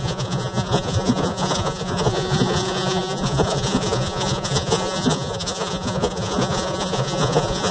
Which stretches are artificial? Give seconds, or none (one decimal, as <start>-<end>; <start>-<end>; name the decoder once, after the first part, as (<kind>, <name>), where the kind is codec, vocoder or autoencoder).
0.0-7.7 (vocoder, Vocos)